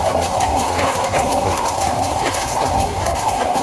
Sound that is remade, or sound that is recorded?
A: remade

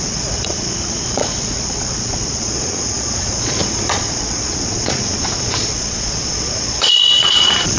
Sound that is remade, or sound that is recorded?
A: remade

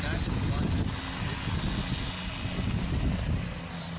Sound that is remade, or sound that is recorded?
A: recorded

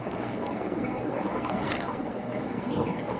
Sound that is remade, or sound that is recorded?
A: remade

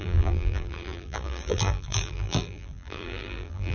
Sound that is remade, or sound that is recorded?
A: remade